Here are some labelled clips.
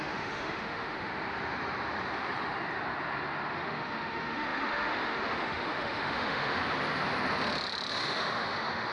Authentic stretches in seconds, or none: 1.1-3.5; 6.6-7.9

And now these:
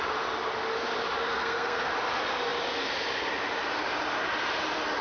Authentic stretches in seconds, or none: 0.0-1.3; 1.9-5.0